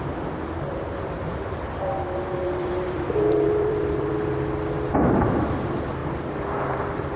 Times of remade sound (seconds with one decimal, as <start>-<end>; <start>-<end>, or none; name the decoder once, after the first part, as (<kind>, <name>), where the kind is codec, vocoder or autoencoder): 0.7-4.1 (vocoder, BigVGAN v2); 6.0-7.2

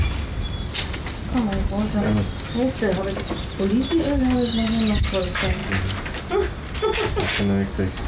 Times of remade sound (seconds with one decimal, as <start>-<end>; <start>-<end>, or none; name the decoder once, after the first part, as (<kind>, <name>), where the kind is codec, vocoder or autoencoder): none

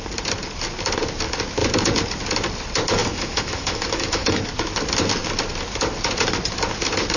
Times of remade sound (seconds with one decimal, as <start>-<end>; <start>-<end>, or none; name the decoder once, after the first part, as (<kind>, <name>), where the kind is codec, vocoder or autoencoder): 3.0-4.4 (autoencoder, DAC-VAE)

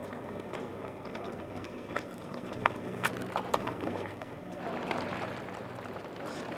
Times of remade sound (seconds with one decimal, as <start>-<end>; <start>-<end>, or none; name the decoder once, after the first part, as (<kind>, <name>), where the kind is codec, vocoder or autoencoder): 0.0-3.1 (codec, SNAC); 3.5-4.6